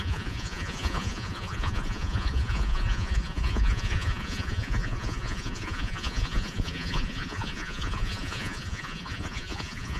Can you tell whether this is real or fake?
fake